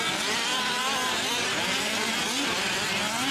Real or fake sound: real